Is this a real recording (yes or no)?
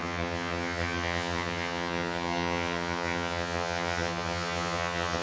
no